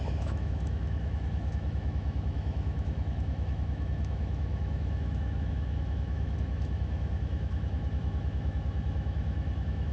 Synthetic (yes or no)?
yes